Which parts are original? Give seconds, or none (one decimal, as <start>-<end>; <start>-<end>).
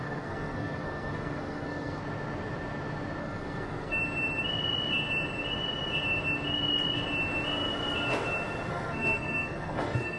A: 2.0-3.2; 4.0-8.7